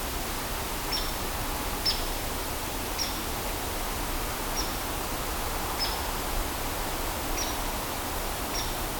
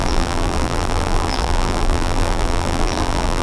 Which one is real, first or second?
first